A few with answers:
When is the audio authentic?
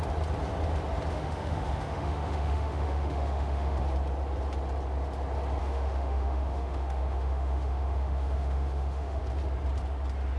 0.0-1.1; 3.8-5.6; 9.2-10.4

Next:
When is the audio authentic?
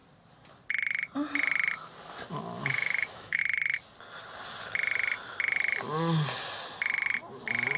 0.0-2.4; 3.4-7.8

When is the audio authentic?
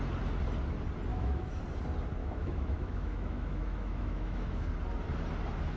0.0-1.1; 1.6-2.2; 4.7-5.8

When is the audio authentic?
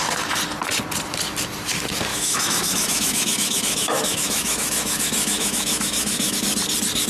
0.0-2.1; 6.4-7.1